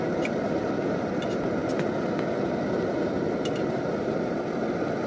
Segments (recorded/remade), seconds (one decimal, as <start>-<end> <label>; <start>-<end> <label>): 0.0-5.1 recorded